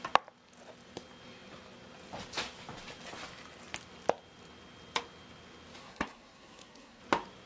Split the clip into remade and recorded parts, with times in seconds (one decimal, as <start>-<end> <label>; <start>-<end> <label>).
0.0-5.8 recorded; 5.8-7.0 remade; 7.0-7.5 recorded